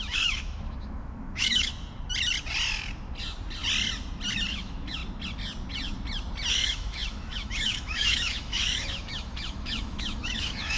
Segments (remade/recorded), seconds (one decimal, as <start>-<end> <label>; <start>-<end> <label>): 0.0-1.7 remade; 1.7-4.5 recorded; 4.5-5.0 remade; 5.0-6.5 recorded; 6.5-10.8 remade